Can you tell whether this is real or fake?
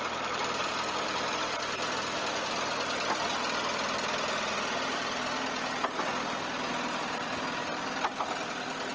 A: real